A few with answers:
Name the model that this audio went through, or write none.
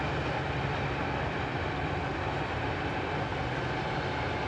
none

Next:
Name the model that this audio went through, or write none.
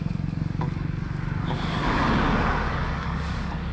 codec, DAC